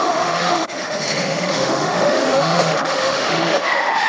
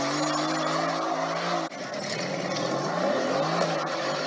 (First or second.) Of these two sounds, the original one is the second